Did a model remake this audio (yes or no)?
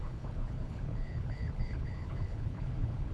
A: yes